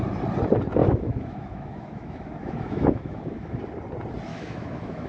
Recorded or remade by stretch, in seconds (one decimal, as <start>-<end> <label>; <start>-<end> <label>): 0.0-0.8 recorded; 0.8-3.6 remade; 3.6-4.3 recorded; 4.3-5.1 remade